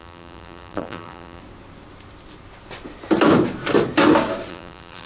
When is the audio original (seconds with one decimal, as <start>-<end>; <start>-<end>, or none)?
1.4-4.5